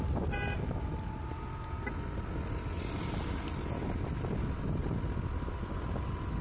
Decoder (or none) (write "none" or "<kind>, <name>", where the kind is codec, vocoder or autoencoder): none